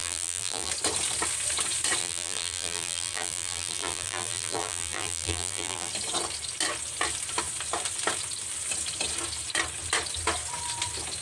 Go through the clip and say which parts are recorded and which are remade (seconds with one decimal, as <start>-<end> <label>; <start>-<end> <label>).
0.0-0.7 remade; 0.7-2.0 recorded; 2.0-5.9 remade; 5.9-11.2 recorded